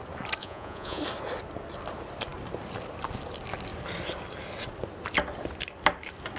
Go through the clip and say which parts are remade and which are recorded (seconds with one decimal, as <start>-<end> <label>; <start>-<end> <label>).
0.0-0.4 recorded; 0.4-1.0 remade; 1.0-6.4 recorded